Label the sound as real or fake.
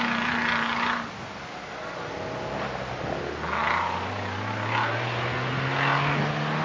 real